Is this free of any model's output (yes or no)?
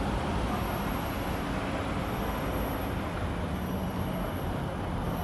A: yes